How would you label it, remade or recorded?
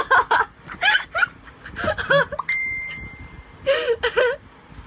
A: recorded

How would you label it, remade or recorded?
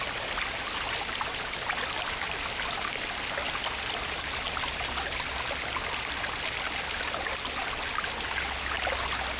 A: recorded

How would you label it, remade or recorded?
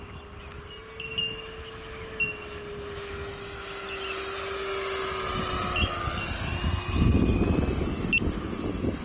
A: recorded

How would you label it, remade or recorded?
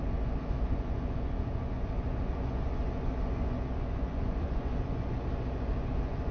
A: remade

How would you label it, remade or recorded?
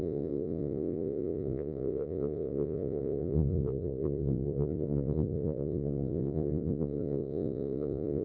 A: remade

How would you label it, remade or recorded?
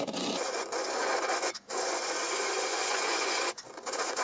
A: remade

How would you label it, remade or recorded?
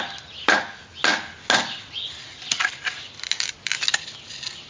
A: recorded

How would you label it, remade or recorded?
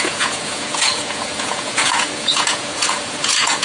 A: remade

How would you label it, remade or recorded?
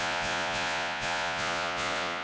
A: remade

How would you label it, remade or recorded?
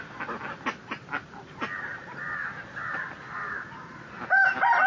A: recorded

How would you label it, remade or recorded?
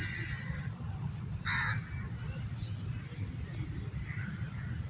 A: recorded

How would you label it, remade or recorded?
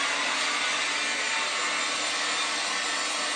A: recorded